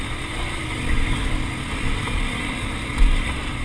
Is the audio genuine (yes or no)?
no